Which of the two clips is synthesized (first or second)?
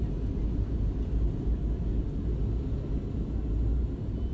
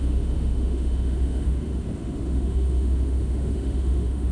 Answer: second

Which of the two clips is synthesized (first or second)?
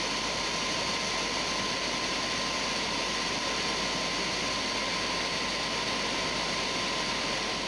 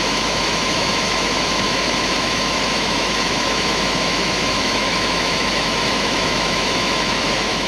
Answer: second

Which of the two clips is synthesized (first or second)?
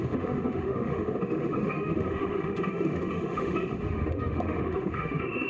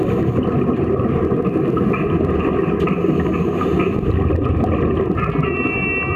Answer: first